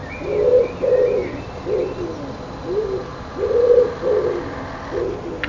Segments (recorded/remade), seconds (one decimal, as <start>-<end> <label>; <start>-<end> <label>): 0.0-5.5 recorded